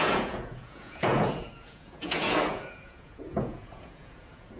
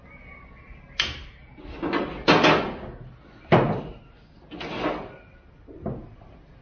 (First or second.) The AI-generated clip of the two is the first